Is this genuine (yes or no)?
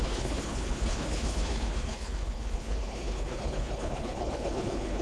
no